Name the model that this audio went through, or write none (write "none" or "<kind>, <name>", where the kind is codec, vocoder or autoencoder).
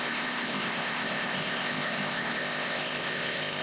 codec, ZipCodec